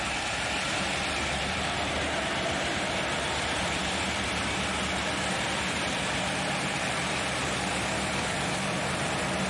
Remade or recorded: remade